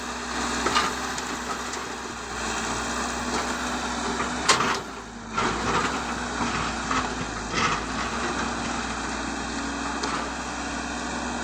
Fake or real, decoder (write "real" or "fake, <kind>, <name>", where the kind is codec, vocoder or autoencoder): real